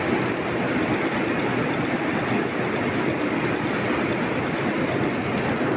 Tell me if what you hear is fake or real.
real